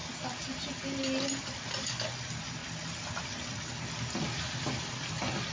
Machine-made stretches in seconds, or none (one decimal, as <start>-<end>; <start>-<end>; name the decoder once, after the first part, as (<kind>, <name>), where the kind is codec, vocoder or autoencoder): none

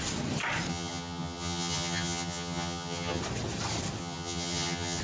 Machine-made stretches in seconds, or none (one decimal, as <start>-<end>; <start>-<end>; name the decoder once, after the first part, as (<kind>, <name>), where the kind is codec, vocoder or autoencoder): 0.7-3.2 (vocoder, HiFi-GAN); 4.0-5.0

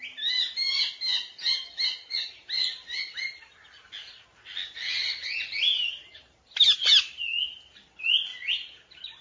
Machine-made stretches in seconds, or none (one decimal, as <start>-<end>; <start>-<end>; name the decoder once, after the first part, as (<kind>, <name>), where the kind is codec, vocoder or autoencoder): none

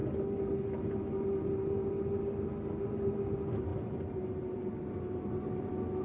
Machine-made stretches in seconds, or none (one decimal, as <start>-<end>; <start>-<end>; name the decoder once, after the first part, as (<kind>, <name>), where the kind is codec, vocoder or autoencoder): none

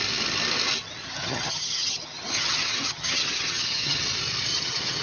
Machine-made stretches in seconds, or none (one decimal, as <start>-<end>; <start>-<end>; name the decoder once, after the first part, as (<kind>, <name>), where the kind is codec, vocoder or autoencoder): 1.0-4.0 (vocoder, HiFi-GAN); 4.5-5.0

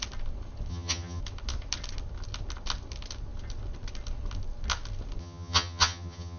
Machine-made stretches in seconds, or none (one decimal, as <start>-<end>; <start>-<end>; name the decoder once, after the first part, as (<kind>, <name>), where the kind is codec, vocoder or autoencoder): 0.7-1.2 (vocoder, HiFi-GAN); 5.2-6.4

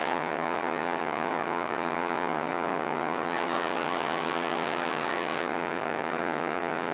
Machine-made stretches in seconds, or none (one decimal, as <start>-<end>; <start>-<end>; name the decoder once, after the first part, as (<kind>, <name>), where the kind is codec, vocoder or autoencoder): 0.0-6.9 (vocoder, HiFi-GAN)